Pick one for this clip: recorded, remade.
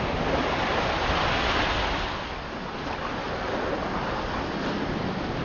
recorded